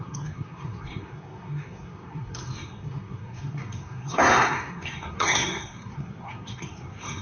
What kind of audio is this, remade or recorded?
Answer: remade